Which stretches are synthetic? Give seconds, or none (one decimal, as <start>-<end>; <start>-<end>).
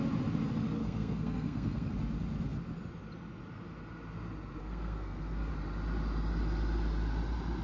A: 0.8-1.9; 4.6-5.5